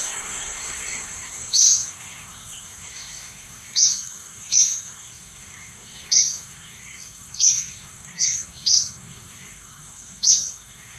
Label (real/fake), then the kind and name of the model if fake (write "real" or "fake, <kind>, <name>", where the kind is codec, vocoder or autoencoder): fake, codec, SNAC